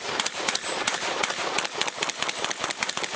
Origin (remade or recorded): recorded